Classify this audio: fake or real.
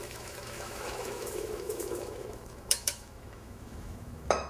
fake